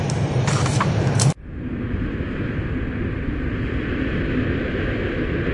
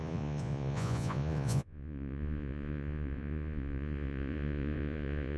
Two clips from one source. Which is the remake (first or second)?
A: second